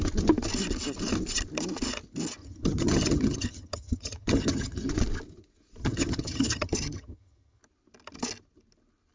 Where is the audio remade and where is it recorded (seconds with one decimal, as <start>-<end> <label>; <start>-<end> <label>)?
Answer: 0.0-2.4 recorded; 2.4-4.9 remade; 4.9-5.8 recorded; 5.8-7.6 remade; 7.6-9.1 recorded